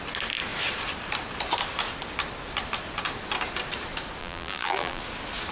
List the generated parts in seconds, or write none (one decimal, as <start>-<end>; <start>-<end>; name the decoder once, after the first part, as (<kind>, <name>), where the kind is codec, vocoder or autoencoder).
4.2-5.0 (vocoder, BigVGAN v2)